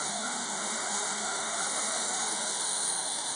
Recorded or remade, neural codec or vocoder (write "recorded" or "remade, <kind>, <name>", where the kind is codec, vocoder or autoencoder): remade, autoencoder, DAC-VAE